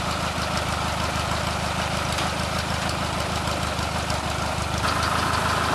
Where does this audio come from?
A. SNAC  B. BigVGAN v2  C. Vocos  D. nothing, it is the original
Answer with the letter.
D